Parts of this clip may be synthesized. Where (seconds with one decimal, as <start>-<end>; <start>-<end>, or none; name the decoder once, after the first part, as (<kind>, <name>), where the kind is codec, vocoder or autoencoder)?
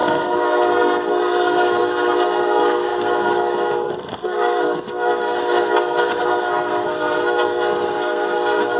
0.0-8.8 (codec, SNAC)